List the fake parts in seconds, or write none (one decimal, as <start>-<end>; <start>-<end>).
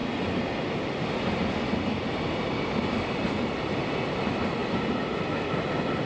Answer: none